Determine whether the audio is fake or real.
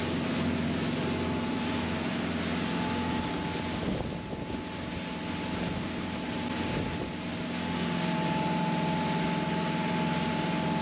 real